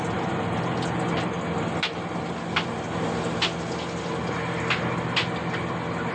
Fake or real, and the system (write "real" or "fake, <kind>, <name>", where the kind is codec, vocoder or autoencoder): real